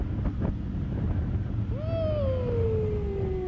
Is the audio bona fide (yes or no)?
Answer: yes